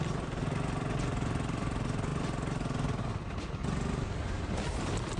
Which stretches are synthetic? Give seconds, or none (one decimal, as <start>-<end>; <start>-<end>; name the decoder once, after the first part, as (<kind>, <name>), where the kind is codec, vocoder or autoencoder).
none